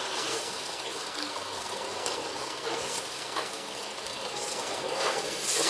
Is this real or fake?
fake